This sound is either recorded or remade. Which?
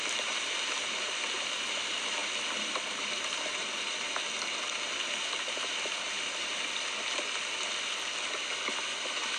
recorded